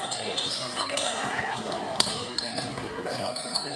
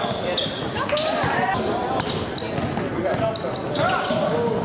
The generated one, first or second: first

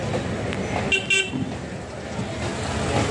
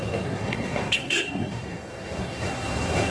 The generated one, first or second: second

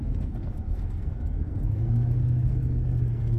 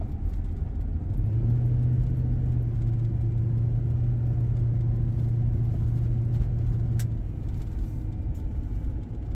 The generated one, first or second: first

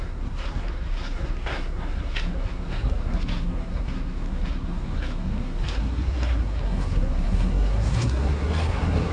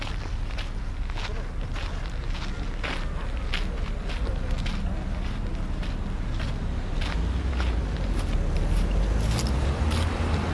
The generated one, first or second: first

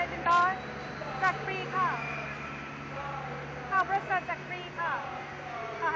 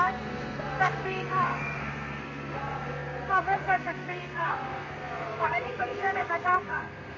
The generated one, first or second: second